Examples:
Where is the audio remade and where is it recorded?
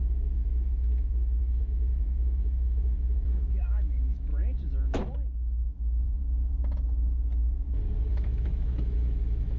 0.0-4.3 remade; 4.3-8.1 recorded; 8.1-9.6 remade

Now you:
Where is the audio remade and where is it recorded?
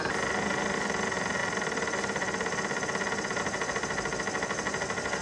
0.0-5.2 recorded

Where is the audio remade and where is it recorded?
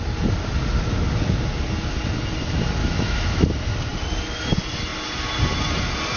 0.0-2.8 recorded; 2.8-3.5 remade; 3.5-6.2 recorded